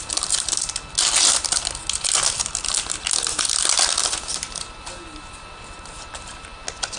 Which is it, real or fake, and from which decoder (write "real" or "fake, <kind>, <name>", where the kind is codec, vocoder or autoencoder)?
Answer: real